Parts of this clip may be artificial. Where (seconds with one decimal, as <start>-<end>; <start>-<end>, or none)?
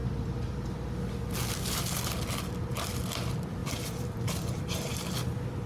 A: 3.6-4.6